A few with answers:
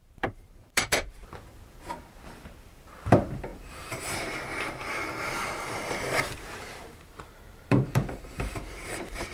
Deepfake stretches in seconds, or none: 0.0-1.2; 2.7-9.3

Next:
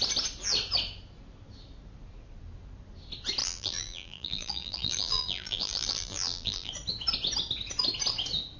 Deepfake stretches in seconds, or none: 3.4-6.7

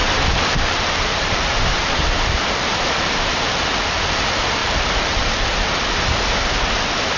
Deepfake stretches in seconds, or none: 0.0-3.5; 4.6-5.4

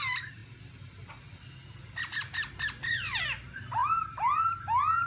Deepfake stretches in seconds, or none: 0.0-0.4; 3.2-5.1

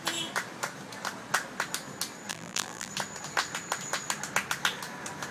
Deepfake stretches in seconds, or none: 2.3-2.9